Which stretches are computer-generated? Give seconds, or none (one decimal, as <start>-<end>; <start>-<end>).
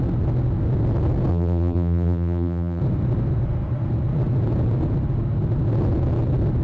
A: 1.3-2.8